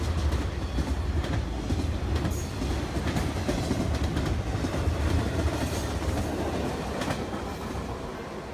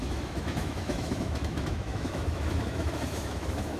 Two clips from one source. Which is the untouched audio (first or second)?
first